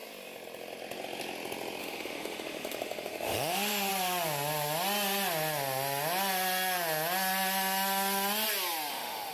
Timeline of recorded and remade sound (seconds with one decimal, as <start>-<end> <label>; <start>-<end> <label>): 0.0-1.8 recorded; 1.8-3.9 remade; 3.9-8.9 recorded; 8.9-9.3 remade